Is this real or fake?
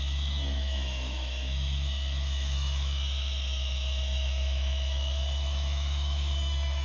fake